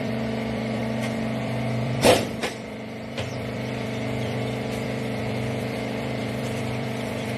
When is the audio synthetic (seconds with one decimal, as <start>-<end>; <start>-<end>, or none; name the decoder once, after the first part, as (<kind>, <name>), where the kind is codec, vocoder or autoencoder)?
0.0-0.8 (vocoder, BigVGAN v2); 1.4-7.4